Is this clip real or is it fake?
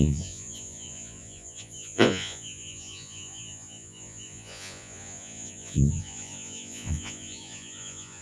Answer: fake